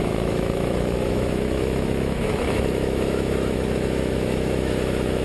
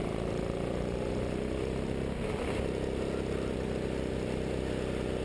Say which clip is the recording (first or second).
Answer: second